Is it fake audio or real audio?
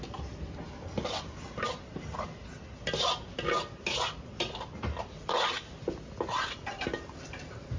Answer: real